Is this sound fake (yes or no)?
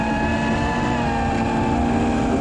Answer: no